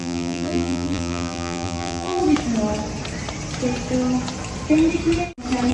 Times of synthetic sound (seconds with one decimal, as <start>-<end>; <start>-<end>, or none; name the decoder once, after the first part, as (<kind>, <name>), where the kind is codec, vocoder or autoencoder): 0.0-2.2 (vocoder, BigVGAN v2)